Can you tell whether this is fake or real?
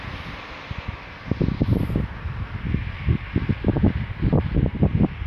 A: real